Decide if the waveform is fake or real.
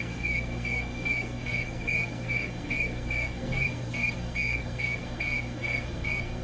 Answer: fake